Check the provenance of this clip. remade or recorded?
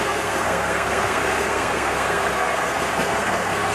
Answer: remade